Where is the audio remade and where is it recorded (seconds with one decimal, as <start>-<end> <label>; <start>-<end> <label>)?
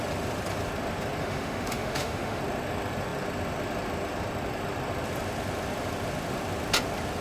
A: 0.0-1.2 recorded; 1.2-2.4 remade; 2.4-7.2 recorded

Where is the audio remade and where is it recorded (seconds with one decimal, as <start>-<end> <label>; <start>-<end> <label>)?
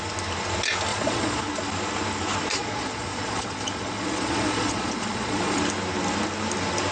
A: 0.0-0.9 recorded; 0.9-1.5 remade; 1.5-2.5 recorded; 2.5-5.6 remade; 5.6-6.9 recorded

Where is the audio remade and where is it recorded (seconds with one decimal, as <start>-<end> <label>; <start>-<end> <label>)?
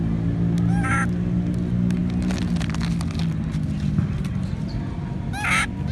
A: 0.0-5.9 recorded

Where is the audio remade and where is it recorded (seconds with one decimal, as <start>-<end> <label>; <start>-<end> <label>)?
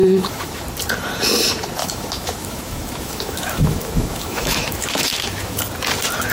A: 0.0-0.6 remade; 0.6-1.8 recorded; 1.8-5.6 remade; 5.6-6.3 recorded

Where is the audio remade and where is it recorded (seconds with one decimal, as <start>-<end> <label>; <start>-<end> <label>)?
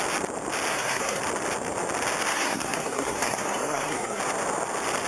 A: 0.0-0.7 recorded; 0.7-1.2 remade; 1.2-2.3 recorded; 2.3-4.2 remade; 4.2-5.1 recorded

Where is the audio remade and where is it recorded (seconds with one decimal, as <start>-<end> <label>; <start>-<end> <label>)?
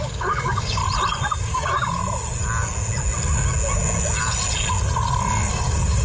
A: 0.0-0.8 remade; 0.8-1.4 recorded; 1.4-2.0 remade; 2.0-5.5 recorded; 5.5-6.0 remade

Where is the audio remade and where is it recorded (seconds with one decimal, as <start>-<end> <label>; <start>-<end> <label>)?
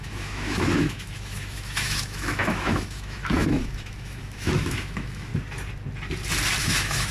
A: 0.0-5.3 remade; 5.3-6.6 recorded; 6.6-7.1 remade